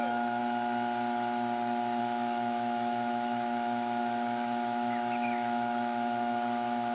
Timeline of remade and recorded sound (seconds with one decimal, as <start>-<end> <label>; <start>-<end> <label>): 0.0-0.4 remade; 0.4-2.0 recorded; 2.0-6.9 remade